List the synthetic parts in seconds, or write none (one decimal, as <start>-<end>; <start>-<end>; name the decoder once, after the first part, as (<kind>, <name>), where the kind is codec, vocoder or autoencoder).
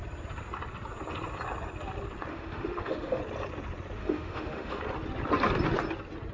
2.3-3.2 (autoencoder, DAC-VAE); 4.0-4.8